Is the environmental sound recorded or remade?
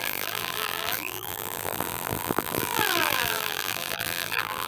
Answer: remade